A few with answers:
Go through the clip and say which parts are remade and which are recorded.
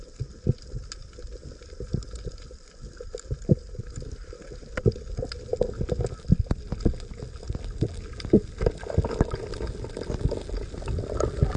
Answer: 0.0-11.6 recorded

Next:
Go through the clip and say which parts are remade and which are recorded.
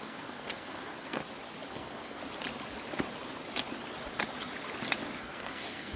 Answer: 0.0-1.2 remade; 1.2-1.7 recorded; 1.7-2.2 remade; 2.2-5.2 recorded; 5.2-6.0 remade